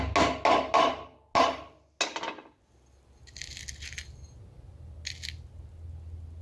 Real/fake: real